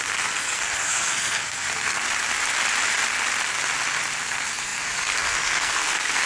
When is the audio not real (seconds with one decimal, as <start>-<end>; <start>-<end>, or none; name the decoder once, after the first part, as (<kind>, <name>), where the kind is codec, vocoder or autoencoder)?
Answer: 0.0-2.0 (codec, SNAC); 4.2-6.3